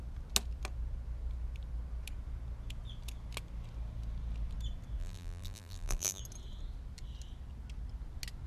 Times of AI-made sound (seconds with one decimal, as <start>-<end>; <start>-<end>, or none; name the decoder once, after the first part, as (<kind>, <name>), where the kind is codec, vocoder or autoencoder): 5.0-6.2 (vocoder, BigVGAN v2)

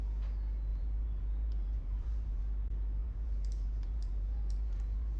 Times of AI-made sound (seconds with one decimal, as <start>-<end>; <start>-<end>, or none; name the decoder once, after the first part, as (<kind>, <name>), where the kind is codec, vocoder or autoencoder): 0.7-2.4 (vocoder, BigVGAN v2); 3.0-5.2

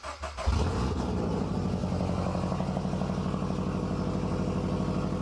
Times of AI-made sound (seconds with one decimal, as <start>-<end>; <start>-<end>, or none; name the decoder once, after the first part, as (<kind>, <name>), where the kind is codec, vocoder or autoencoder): none